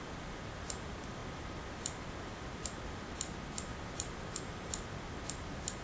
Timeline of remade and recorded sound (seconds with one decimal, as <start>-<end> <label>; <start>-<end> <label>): 0.0-3.7 recorded; 3.7-4.7 remade; 4.7-5.8 recorded